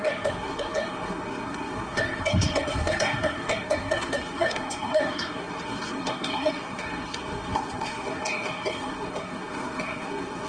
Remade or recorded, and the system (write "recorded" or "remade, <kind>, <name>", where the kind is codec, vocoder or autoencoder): remade, codec, SNAC